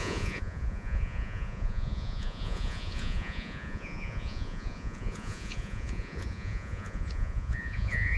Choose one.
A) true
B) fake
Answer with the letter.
B